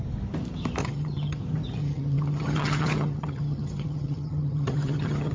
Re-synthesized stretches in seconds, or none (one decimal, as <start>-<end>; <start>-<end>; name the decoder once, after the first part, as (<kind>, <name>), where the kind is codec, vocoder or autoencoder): 0.8-1.4 (vocoder, HiFi-GAN); 1.8-5.3